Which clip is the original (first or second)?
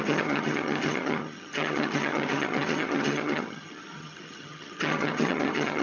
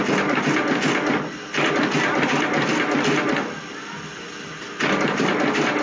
second